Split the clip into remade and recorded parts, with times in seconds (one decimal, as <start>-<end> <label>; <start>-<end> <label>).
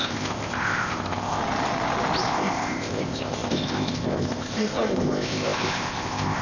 0.0-1.4 remade; 1.4-2.3 recorded; 2.3-6.4 remade